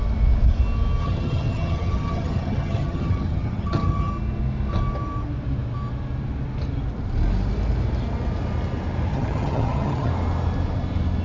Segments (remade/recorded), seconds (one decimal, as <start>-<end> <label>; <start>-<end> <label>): 0.0-1.0 recorded; 1.0-4.1 remade; 4.1-9.1 recorded; 9.1-10.1 remade; 10.1-11.2 recorded